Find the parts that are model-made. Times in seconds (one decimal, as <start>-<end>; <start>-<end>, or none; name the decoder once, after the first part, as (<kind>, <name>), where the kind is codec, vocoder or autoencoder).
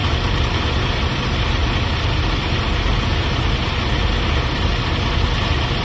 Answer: 0.0-0.6 (vocoder, BigVGAN v2)